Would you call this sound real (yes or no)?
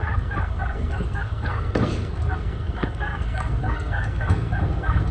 no